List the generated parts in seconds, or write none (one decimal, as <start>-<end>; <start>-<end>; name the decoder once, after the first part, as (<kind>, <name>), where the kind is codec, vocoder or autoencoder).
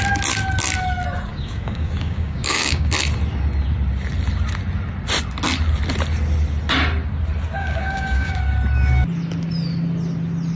1.3-2.9 (codec, DAC); 7.6-8.3